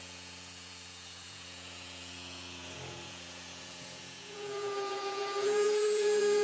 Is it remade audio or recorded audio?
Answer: remade